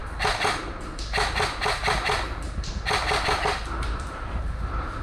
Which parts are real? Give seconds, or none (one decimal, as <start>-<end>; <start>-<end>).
0.0-5.0

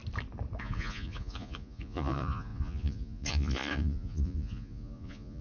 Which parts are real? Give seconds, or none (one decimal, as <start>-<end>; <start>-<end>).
0.0-0.6

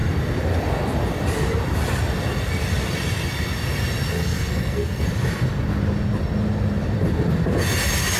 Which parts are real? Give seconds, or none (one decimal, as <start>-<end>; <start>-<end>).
0.0-4.1; 5.1-8.2

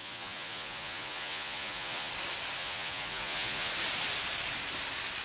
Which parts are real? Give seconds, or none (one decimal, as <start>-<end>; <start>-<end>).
2.1-2.6; 3.7-5.2

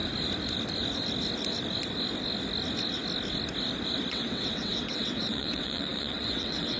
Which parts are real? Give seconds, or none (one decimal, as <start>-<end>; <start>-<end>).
0.0-4.1

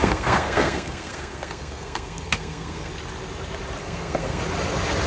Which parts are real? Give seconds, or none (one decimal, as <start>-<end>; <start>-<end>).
2.9-3.8; 4.4-5.1

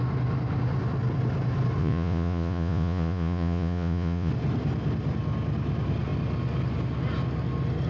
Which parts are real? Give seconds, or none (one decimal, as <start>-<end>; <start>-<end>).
0.0-1.8; 4.3-7.9